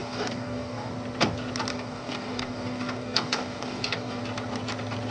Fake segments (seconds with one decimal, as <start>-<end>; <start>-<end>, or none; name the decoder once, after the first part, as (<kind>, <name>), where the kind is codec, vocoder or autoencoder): 0.0-0.9 (codec, DAC); 1.7-4.2